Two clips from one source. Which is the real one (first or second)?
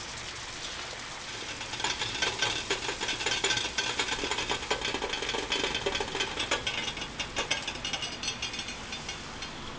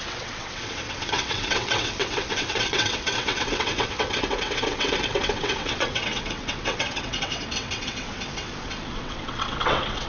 first